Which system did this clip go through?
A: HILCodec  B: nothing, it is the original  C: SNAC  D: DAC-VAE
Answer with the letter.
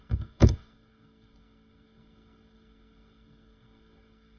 C